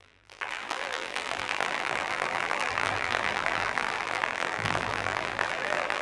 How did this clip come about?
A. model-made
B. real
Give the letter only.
A